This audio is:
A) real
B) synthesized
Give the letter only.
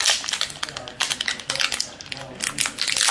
A